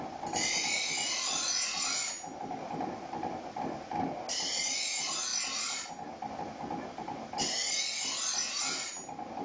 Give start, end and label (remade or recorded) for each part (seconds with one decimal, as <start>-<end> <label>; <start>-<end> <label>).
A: 0.0-9.4 recorded